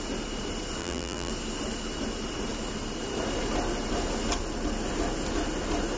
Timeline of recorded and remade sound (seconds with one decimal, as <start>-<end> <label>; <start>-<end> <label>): 0.0-0.8 recorded; 0.8-1.3 remade; 1.3-6.0 recorded